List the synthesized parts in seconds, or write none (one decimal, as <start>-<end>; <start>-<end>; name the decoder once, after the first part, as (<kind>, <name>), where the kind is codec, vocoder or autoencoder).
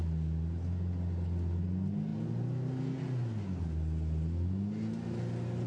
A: none